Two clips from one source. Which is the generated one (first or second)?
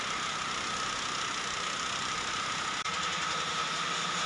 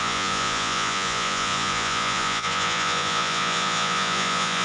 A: second